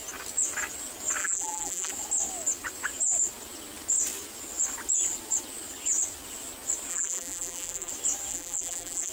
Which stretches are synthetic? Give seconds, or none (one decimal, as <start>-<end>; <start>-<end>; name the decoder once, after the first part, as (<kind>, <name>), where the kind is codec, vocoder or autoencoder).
1.2-1.9 (vocoder, BigVGAN v2); 6.9-7.9; 8.3-9.1